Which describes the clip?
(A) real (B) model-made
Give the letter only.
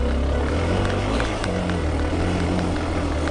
A